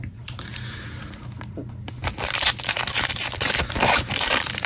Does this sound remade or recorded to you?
remade